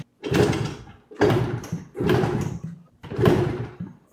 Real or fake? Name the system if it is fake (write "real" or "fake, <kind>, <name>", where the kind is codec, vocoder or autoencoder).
fake, vocoder, BigVGAN v2